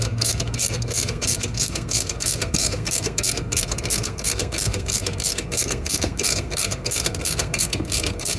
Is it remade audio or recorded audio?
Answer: remade